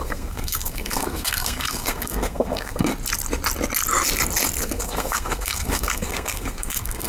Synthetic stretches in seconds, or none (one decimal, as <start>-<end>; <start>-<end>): 0.0-2.9; 4.6-7.1